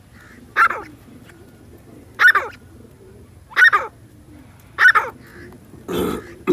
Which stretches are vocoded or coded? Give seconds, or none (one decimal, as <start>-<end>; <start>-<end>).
none

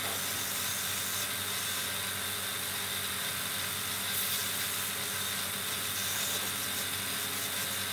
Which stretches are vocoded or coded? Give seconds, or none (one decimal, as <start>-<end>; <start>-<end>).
none